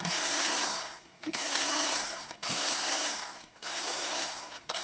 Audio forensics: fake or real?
fake